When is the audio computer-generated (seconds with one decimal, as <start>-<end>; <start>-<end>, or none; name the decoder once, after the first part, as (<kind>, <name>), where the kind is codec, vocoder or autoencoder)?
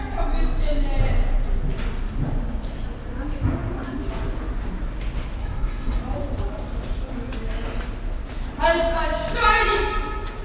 5.4-6.0 (codec, DAC)